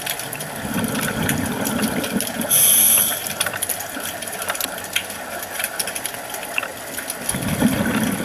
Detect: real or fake real